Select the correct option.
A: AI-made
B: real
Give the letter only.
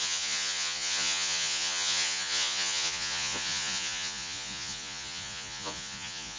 A